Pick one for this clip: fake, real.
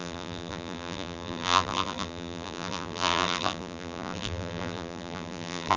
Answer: fake